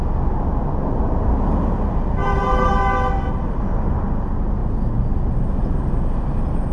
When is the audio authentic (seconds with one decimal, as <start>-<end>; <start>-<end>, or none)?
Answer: 0.0-2.2; 2.7-6.7